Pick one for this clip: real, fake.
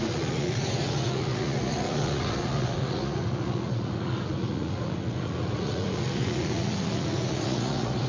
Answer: fake